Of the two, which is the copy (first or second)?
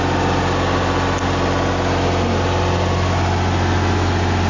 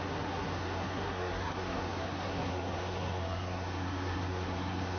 second